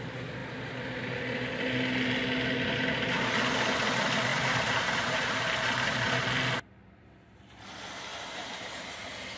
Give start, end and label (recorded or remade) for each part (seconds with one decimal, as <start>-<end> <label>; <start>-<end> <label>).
0.0-4.3 recorded; 4.3-6.2 remade; 6.2-8.1 recorded; 8.1-8.8 remade; 8.8-9.4 recorded